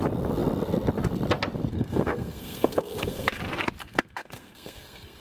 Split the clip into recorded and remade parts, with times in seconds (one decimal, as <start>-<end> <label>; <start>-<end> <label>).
0.0-1.7 recorded; 1.7-3.4 remade; 3.4-3.8 recorded; 3.8-5.2 remade